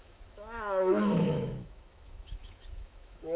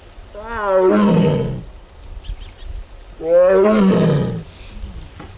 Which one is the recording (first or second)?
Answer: second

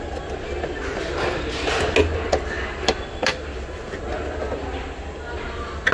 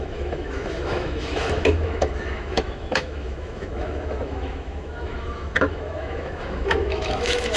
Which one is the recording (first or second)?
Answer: first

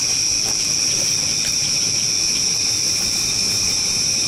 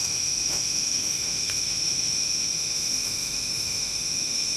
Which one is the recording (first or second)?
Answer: first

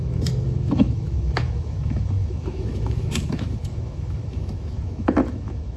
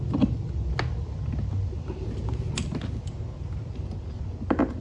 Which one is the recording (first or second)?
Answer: second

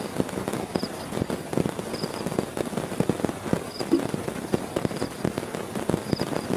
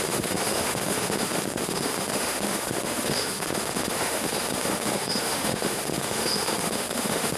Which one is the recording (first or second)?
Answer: first